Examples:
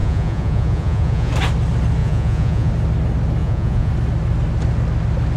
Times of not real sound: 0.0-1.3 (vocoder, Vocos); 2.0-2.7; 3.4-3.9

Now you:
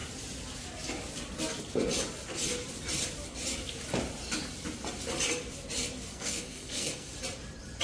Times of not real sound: 6.1-7.1 (codec, SNAC)

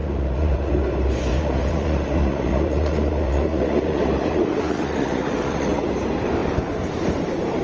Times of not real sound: 0.0-0.8 (vocoder, Vocos); 1.3-5.9